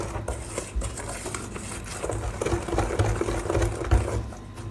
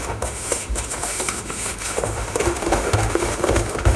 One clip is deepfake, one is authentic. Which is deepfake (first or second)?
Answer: second